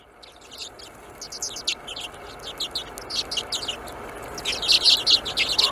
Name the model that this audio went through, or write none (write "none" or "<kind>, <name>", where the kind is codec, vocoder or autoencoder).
none